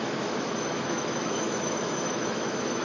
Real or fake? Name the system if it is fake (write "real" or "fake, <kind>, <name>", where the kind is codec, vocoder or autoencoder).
fake, autoencoder, DAC-VAE